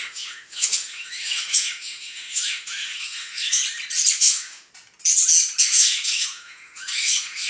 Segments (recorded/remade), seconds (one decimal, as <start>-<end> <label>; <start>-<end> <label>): 0.0-3.6 remade; 3.6-4.1 recorded; 4.1-4.7 remade; 4.7-5.6 recorded; 5.6-7.5 remade